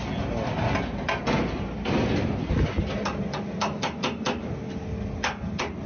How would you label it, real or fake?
real